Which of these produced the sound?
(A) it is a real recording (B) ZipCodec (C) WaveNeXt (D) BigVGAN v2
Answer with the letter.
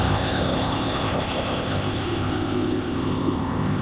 B